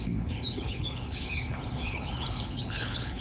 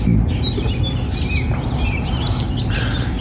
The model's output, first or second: first